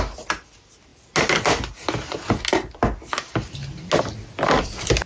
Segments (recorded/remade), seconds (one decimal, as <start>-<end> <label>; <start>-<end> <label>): 0.0-5.1 recorded

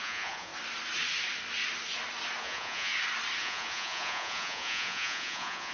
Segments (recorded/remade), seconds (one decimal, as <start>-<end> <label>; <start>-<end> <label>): 0.0-0.5 remade; 0.5-2.4 recorded; 2.4-2.9 remade; 2.9-3.4 recorded; 3.4-5.7 remade

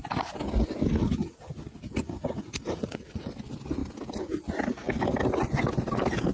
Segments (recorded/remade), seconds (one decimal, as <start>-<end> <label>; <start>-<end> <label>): 0.0-1.0 recorded; 1.0-3.3 remade; 3.3-6.3 recorded

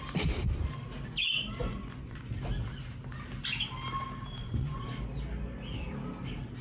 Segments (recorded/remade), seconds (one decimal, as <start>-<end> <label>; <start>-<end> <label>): 0.0-1.6 recorded; 1.6-2.3 remade; 2.3-4.4 recorded; 4.4-4.9 remade; 4.9-6.6 recorded

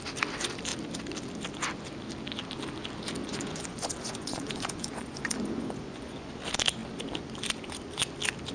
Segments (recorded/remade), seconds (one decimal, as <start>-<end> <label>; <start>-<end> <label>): 0.0-3.2 recorded; 3.2-6.3 remade; 6.3-8.5 recorded

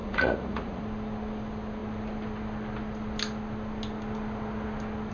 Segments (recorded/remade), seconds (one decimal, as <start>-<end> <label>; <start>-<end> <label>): 0.0-0.8 remade; 0.8-5.1 recorded

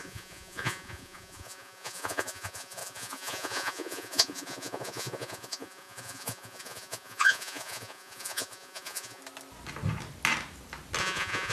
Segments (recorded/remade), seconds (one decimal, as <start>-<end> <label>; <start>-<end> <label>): 0.0-9.2 remade; 9.2-11.0 recorded; 11.0-11.5 remade